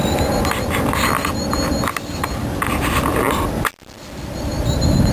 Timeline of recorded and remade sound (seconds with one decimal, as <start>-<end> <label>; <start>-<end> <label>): 0.0-5.1 recorded